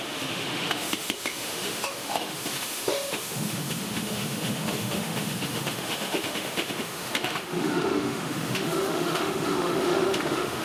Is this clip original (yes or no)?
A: no